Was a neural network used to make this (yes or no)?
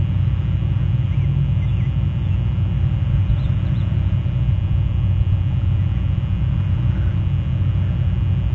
no